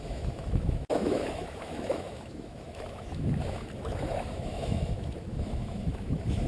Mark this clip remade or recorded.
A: remade